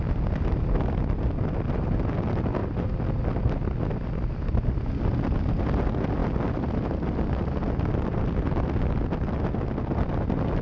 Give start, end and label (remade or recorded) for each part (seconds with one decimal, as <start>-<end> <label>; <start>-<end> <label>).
0.0-10.6 recorded